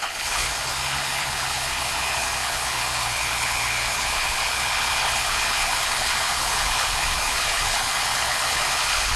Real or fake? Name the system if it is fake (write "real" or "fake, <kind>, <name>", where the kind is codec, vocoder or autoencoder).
fake, codec, HILCodec